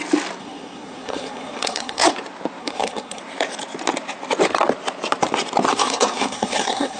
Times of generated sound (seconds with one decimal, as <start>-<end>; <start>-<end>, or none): 0.4-2.1; 2.6-3.2; 5.7-7.0